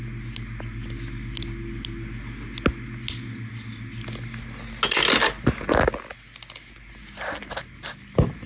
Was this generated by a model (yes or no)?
no